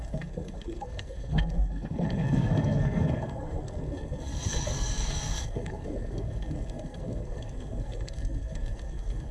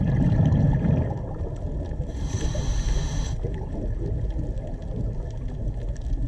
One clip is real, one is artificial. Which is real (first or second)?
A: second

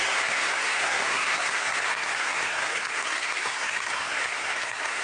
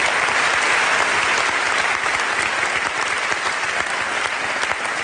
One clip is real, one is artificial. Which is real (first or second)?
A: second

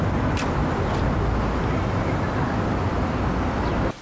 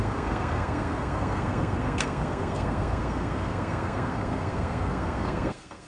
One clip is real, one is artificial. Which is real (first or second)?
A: first